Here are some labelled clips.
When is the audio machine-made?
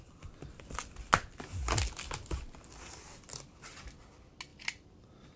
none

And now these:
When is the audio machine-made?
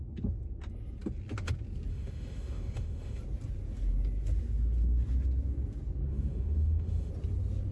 1.9-3.2 (autoencoder, DAC-VAE); 6.1-7.1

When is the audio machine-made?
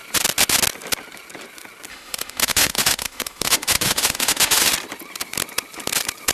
1.9-4.6 (autoencoder, DAC-VAE)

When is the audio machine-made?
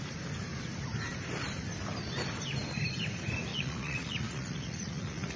3.5-5.4 (vocoder, Vocos)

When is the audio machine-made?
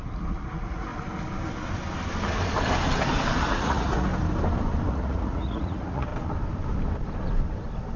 0.0-0.9 (vocoder, Vocos); 3.5-4.1; 4.9-6.1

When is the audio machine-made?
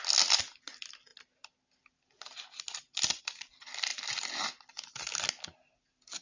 none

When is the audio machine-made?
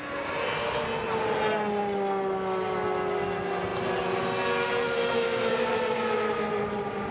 none